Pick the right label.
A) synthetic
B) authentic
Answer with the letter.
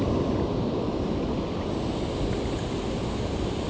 B